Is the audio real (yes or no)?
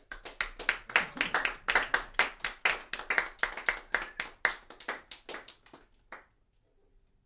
yes